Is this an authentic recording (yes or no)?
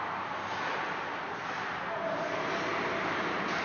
yes